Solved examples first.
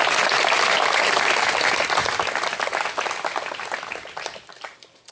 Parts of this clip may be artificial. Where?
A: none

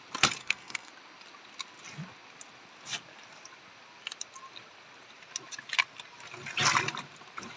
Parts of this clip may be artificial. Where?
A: 0.4-0.9 (codec, SNAC)

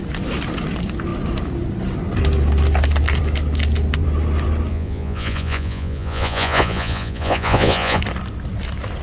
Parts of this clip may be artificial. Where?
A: 4.7-8.0 (vocoder, Vocos)

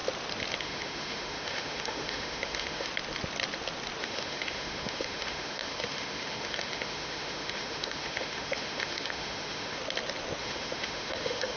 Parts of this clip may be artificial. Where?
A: 0.6-2.9 (autoencoder, DAC-VAE); 4.0-9.8; 10.4-11.6

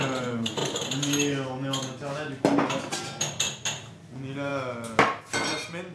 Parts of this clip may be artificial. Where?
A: none

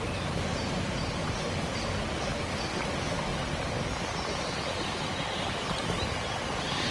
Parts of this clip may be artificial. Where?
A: none